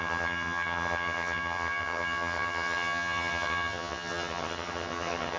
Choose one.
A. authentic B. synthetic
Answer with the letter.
B